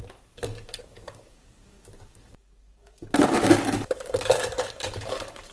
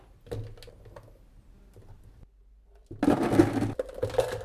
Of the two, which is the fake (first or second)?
first